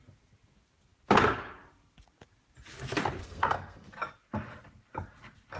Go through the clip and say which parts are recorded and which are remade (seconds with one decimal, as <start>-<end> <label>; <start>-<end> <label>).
0.0-3.2 recorded; 3.2-3.9 remade; 3.9-5.6 recorded